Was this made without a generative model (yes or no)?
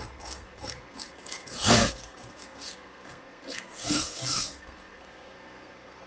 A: no